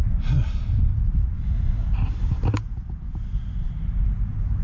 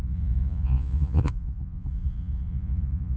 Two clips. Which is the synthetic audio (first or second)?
second